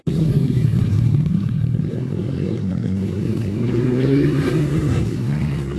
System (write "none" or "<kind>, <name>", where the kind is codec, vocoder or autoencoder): codec, SNAC